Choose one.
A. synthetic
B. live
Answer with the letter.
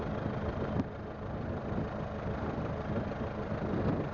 B